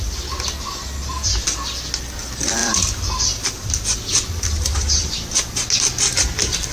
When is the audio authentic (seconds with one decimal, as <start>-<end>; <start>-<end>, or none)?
0.0-2.6; 5.1-6.7